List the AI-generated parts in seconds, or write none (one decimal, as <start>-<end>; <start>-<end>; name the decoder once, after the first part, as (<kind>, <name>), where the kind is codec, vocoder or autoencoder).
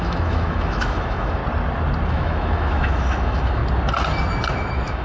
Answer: 0.0-1.4 (autoencoder, DAC-VAE); 2.1-3.6; 4.5-5.0